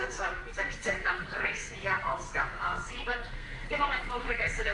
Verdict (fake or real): fake